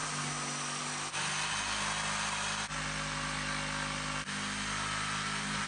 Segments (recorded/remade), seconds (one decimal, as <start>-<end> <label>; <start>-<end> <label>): 0.0-5.7 recorded